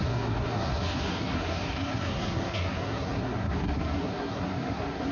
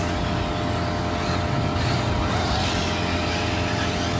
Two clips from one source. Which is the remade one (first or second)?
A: first